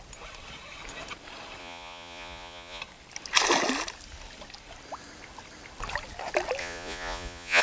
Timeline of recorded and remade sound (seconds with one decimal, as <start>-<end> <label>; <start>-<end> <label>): 0.0-1.6 recorded; 1.6-2.8 remade; 2.8-6.6 recorded; 6.6-7.6 remade